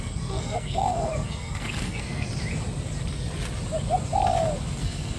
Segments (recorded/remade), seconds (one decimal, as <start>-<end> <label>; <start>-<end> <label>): 0.0-2.3 remade; 2.3-4.8 recorded; 4.8-5.2 remade

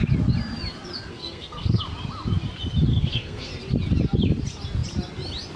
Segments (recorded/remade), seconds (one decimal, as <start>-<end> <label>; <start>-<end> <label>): 0.0-1.1 recorded; 1.1-1.8 remade; 1.8-2.9 recorded; 2.9-3.5 remade; 3.5-5.6 recorded